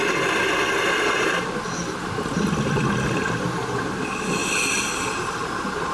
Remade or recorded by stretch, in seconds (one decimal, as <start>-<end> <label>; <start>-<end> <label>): 0.0-5.9 recorded